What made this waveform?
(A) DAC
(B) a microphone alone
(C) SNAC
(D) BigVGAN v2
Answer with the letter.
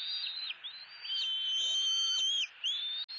B